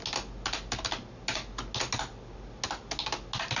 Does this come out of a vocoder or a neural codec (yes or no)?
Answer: no